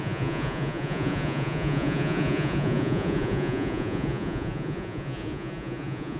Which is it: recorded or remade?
remade